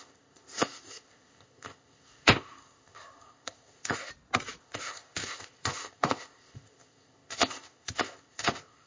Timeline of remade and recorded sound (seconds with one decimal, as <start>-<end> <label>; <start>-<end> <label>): 0.0-4.1 remade; 4.1-4.6 recorded; 4.6-8.9 remade